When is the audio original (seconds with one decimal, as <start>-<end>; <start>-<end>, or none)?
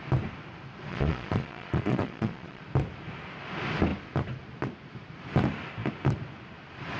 0.0-0.9; 2.6-7.0